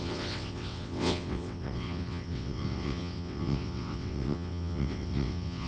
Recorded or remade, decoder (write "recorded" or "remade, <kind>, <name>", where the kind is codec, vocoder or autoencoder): remade, vocoder, WaveNeXt